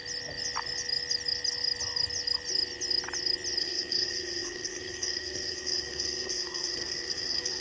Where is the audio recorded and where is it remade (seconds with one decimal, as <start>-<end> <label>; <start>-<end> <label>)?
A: 0.0-3.6 recorded; 3.6-7.6 remade